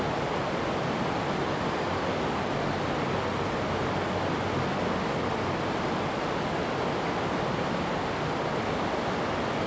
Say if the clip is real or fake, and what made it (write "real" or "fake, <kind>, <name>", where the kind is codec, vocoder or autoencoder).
real